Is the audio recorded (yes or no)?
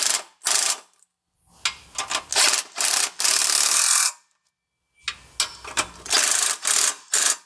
yes